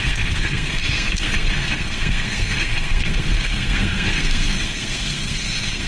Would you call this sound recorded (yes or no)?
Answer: no